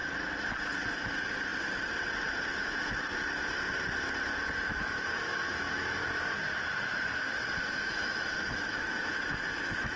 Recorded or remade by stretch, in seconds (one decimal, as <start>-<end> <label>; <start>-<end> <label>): 0.0-2.6 recorded; 2.6-3.1 remade; 3.1-4.7 recorded; 4.7-10.0 remade